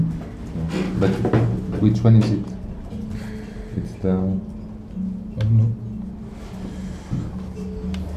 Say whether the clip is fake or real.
real